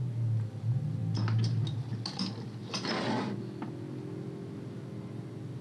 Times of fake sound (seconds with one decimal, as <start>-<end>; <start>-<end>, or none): none